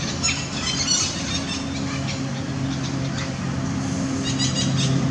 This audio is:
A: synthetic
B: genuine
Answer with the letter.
B